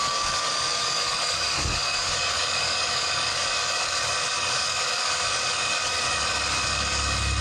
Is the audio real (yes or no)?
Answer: no